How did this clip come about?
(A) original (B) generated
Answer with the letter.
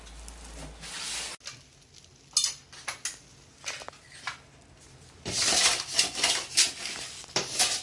A